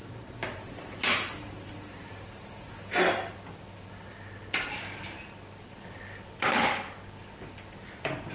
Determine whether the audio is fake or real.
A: real